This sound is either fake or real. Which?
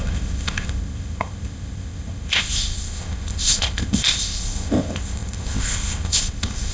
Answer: fake